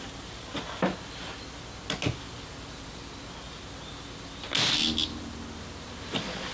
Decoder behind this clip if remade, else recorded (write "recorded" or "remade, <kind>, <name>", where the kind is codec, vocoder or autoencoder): recorded